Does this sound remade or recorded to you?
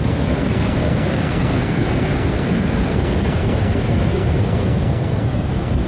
remade